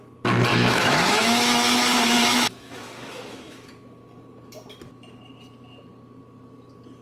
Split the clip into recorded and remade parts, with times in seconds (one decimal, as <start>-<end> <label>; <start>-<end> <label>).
0.0-0.5 recorded; 0.5-3.7 remade; 3.7-7.0 recorded